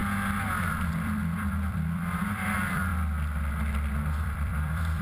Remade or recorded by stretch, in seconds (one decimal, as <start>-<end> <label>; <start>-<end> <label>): 0.0-0.6 recorded; 0.6-2.9 remade; 2.9-3.7 recorded; 3.7-5.0 remade